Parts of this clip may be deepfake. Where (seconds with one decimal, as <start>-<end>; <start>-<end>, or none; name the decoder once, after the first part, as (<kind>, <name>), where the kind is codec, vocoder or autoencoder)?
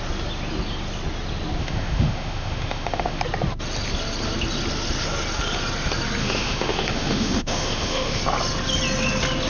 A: 1.6-3.2 (autoencoder, DAC-VAE); 6.2-8.2